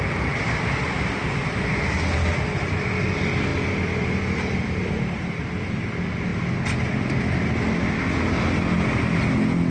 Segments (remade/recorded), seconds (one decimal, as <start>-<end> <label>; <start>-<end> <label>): 0.0-9.7 recorded